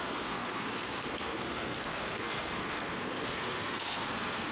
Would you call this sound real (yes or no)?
no